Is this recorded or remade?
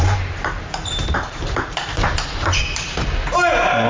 remade